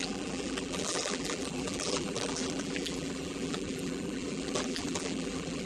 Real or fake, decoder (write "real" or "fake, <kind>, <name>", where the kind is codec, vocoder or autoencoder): fake, vocoder, BigVGAN v2